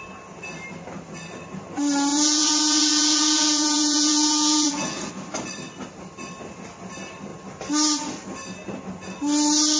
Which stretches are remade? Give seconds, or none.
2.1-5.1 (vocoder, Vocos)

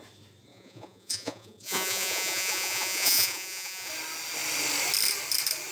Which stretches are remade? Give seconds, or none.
0.5-3.9 (vocoder, Vocos)

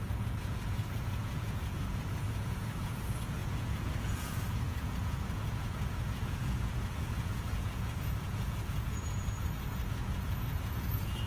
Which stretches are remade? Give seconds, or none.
0.0-11.3 (vocoder, Vocos)

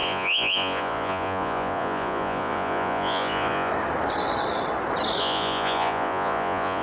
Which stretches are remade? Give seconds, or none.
0.0-3.7 (vocoder, Vocos); 5.2-6.8

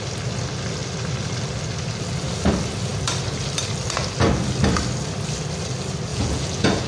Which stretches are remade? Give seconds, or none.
6.1-6.9 (vocoder, Vocos)

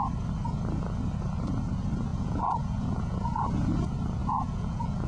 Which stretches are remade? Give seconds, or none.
2.1-3.5 (vocoder, Vocos); 4.2-5.1